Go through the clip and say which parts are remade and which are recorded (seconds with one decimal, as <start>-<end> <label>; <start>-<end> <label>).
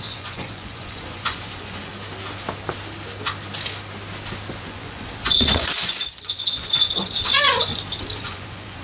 0.0-1.9 remade; 1.9-4.5 recorded; 4.5-7.7 remade; 7.7-8.2 recorded; 8.2-8.8 remade